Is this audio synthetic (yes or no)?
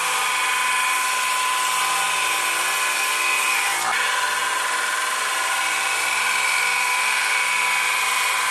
no